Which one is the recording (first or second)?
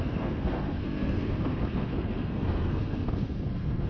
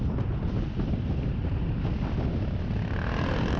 second